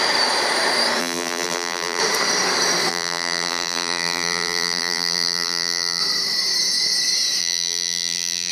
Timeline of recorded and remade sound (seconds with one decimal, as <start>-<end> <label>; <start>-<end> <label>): 0.0-1.0 recorded; 1.0-2.0 remade; 2.0-2.9 recorded; 2.9-6.0 remade; 6.0-7.4 recorded; 7.4-8.5 remade